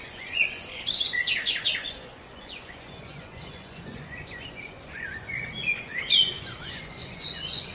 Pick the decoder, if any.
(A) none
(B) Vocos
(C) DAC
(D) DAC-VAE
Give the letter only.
B